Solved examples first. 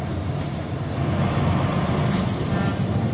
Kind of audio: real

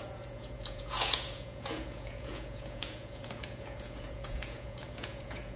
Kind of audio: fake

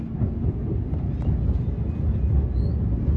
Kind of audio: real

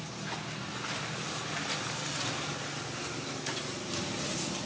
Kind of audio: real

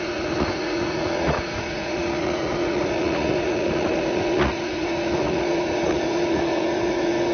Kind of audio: fake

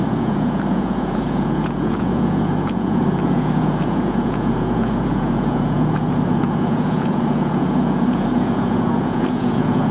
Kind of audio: fake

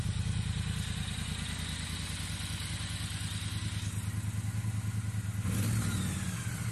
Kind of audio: real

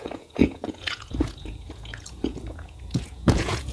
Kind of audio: fake